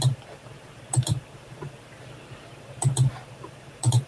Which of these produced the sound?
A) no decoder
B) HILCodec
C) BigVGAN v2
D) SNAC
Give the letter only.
C